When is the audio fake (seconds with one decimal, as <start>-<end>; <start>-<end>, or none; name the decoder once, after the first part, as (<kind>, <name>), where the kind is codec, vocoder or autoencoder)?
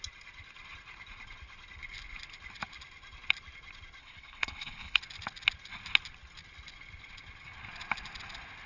4.0-5.0 (codec, HILCodec)